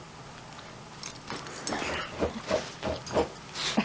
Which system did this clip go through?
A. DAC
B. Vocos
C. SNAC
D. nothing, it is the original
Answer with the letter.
D